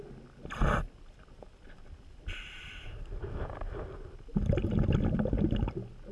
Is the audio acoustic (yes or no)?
yes